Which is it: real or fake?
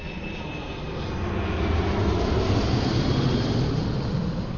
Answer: real